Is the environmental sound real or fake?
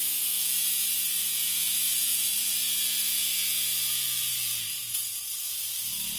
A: fake